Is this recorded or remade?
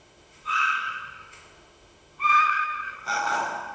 remade